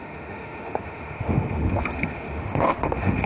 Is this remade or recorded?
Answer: remade